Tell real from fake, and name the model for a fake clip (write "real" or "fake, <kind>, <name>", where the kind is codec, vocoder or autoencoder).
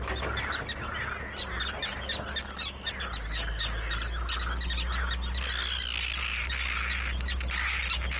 real